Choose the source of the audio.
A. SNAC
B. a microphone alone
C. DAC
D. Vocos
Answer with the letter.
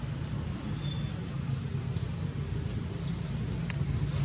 B